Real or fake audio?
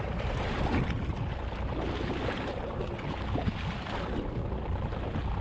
real